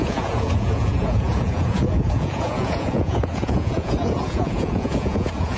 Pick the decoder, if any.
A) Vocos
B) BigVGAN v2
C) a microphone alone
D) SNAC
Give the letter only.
A